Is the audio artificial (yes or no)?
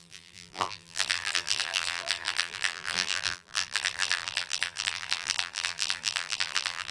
yes